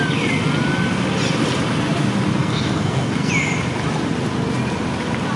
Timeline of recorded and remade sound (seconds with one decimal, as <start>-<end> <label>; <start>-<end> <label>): 0.0-2.4 recorded; 2.4-3.3 remade; 3.3-5.4 recorded

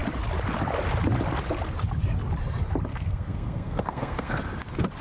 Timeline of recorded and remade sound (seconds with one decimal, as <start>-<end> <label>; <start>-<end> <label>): 0.0-2.9 recorded; 2.9-4.4 remade; 4.4-5.0 recorded